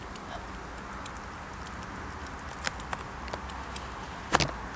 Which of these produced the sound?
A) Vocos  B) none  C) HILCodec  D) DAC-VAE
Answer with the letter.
B